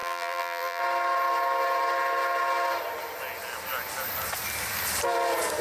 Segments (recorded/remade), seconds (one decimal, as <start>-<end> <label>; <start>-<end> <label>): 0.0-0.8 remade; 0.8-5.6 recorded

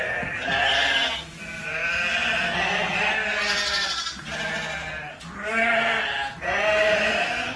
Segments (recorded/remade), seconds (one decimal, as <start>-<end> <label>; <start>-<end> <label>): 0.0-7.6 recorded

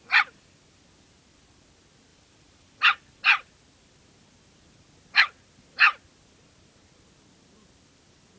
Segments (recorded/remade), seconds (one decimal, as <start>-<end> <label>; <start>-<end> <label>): 0.0-2.1 recorded; 2.1-3.5 remade; 3.5-8.4 recorded